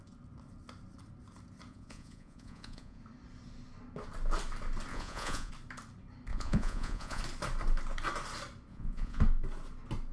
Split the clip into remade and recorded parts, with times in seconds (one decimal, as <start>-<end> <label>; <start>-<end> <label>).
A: 0.0-1.7 recorded; 1.7-3.0 remade; 3.0-4.9 recorded; 4.9-5.5 remade; 5.5-6.3 recorded; 6.3-7.2 remade; 7.2-8.7 recorded; 8.7-9.2 remade; 9.2-10.1 recorded